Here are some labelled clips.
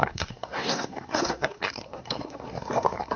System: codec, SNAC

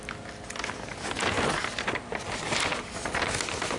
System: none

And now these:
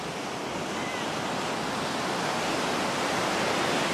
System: none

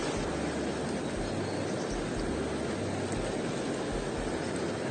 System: none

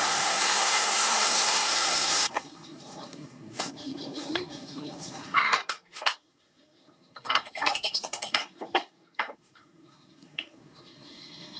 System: codec, SNAC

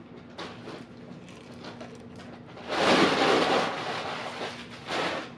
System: none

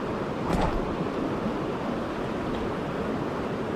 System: none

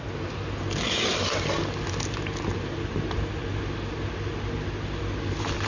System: none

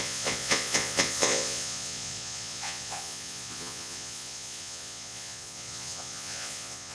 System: vocoder, Vocos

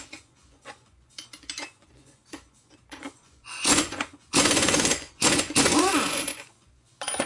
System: vocoder, Vocos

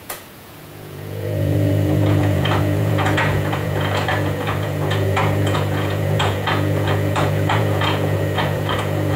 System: vocoder, Vocos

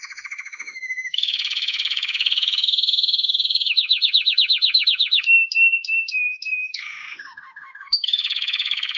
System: autoencoder, DAC-VAE